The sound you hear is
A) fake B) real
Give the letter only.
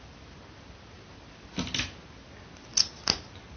B